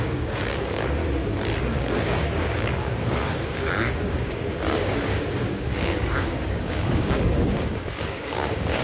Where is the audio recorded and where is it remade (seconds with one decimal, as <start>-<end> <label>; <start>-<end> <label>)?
0.0-1.0 remade; 1.0-1.6 recorded; 1.6-8.8 remade